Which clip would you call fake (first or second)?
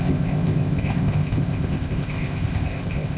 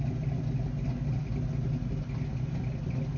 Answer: first